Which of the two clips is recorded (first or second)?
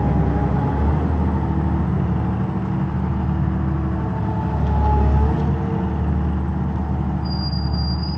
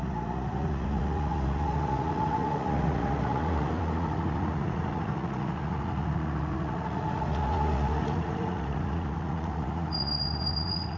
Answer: first